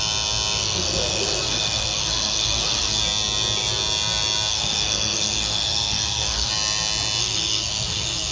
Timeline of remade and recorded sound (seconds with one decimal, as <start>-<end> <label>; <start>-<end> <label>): 0.0-0.6 recorded; 0.6-3.0 remade; 3.0-4.5 recorded; 4.5-6.5 remade; 6.5-7.2 recorded; 7.2-8.3 remade